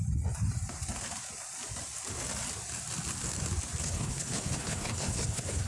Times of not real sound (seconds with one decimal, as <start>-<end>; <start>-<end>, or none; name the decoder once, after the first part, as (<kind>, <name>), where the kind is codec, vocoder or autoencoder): 3.8-5.7 (codec, HILCodec)